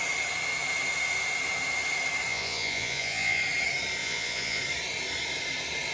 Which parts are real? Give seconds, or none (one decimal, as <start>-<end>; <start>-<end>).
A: 0.0-2.3; 3.4-4.0; 4.6-5.9